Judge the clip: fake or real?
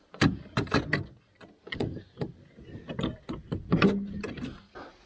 real